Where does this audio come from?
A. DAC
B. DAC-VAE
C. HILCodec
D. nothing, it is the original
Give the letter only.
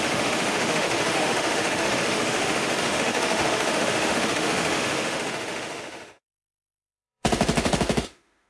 B